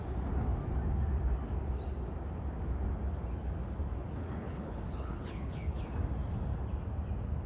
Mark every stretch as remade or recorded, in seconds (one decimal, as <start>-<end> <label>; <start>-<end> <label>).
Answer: 0.0-4.2 recorded; 4.2-5.8 remade; 5.8-7.5 recorded